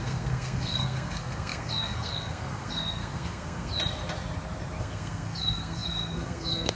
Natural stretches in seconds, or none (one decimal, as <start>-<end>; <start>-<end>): 3.7-4.8